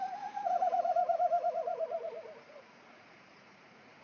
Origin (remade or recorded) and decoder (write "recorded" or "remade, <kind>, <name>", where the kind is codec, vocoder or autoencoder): remade, vocoder, Vocos